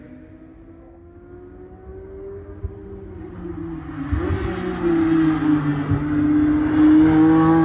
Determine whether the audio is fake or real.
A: real